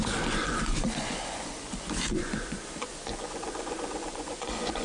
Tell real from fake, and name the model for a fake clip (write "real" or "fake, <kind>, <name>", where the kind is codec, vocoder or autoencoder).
fake, vocoder, Vocos